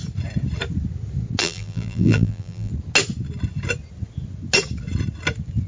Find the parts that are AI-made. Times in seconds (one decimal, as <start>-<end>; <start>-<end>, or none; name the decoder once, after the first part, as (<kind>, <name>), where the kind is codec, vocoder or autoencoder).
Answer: 1.4-2.7 (vocoder, BigVGAN v2)